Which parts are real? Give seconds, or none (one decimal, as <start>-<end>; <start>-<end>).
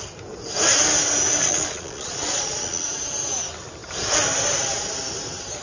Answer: 0.0-1.4; 2.9-5.6